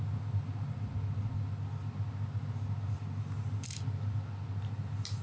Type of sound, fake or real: real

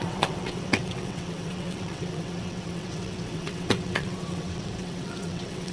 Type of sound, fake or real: fake